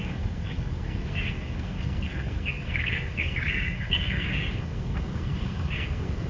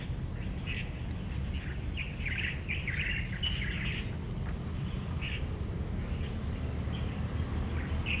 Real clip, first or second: second